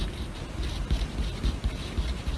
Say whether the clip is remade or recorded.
recorded